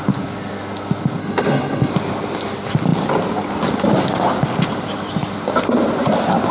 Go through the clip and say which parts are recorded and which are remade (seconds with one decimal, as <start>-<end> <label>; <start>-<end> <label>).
0.0-1.2 recorded; 1.2-1.9 remade; 1.9-6.5 recorded